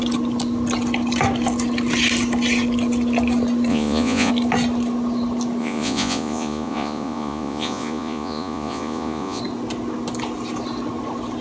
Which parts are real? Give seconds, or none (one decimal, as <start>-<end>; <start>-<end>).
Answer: 0.0-3.7; 4.3-5.6; 9.4-11.4